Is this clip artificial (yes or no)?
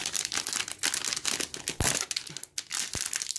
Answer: no